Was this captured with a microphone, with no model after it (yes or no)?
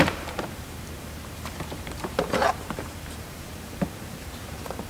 no